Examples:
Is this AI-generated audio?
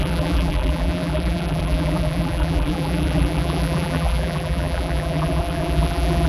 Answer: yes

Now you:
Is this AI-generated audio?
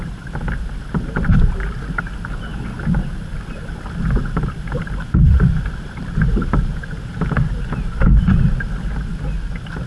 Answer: no